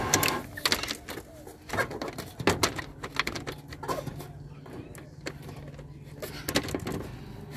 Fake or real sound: real